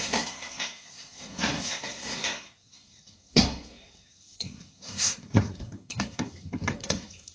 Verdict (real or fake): fake